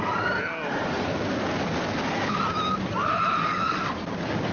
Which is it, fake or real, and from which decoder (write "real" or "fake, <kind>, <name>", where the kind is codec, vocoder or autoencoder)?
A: real